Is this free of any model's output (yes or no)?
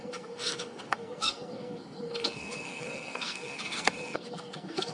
no